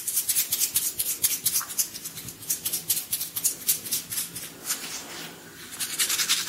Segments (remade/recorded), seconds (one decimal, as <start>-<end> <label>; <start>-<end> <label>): 0.0-5.0 remade; 5.0-5.8 recorded; 5.8-6.5 remade